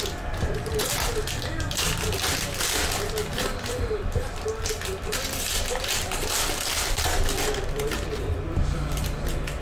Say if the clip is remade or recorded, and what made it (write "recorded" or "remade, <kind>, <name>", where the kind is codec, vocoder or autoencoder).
remade, vocoder, BigVGAN v2